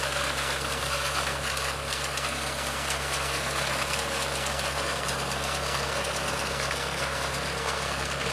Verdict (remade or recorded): remade